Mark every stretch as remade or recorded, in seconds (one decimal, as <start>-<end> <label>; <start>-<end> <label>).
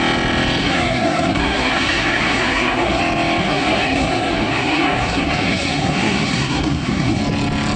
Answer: 0.0-0.6 recorded; 0.6-3.0 remade; 3.0-3.4 recorded; 3.4-7.2 remade; 7.2-7.8 recorded